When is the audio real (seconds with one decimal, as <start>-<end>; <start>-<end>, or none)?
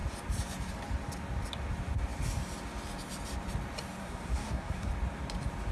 0.0-4.0; 4.9-5.7